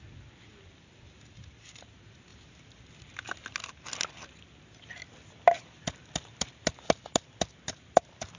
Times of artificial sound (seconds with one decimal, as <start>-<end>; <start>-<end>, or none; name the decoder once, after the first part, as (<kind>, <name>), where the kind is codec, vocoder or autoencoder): none